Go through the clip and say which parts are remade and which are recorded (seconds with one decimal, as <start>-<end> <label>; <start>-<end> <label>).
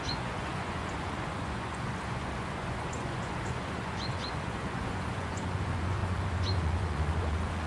0.0-7.7 remade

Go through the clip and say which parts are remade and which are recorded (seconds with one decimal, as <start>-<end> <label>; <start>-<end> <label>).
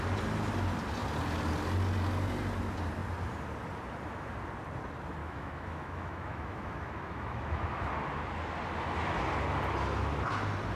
0.0-5.2 recorded; 5.2-7.9 remade; 7.9-10.7 recorded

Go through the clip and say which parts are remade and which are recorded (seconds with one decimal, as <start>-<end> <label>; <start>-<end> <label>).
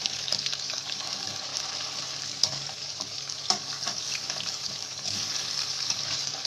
0.0-1.5 remade; 1.5-2.2 recorded; 2.2-6.5 remade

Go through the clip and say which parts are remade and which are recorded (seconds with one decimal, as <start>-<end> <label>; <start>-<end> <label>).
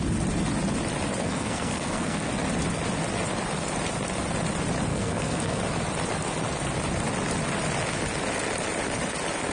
0.0-1.2 recorded; 1.2-2.3 remade; 2.3-4.9 recorded; 4.9-5.6 remade; 5.6-9.5 recorded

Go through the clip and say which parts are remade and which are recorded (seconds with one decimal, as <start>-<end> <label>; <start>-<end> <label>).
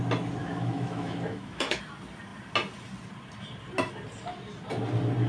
0.0-0.4 recorded; 0.4-1.8 remade; 1.8-5.3 recorded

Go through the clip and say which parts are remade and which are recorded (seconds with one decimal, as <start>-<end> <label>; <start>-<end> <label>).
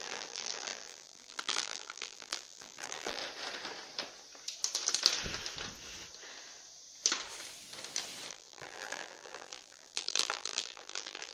0.0-3.2 remade; 3.2-8.3 recorded; 8.3-11.3 remade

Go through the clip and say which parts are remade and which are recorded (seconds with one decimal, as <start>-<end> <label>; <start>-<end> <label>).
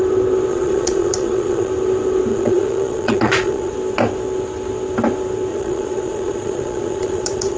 0.0-0.5 recorded; 0.5-1.7 remade; 1.7-2.3 recorded; 2.3-3.7 remade; 3.7-5.5 recorded; 5.5-7.6 remade